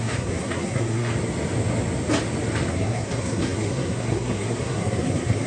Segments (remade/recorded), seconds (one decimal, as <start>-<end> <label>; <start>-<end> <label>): 0.0-1.1 remade; 1.1-2.7 recorded; 2.7-5.5 remade